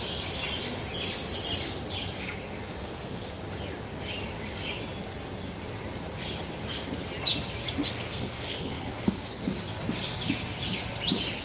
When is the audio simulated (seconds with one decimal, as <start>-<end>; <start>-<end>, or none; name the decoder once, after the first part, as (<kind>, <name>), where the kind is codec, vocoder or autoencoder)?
2.8-3.4 (codec, SNAC); 7.8-9.4